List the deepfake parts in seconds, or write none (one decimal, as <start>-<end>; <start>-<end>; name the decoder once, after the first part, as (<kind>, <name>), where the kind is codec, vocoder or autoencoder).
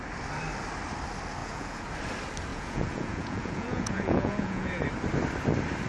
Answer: 1.4-1.9 (vocoder, Vocos); 2.5-4.8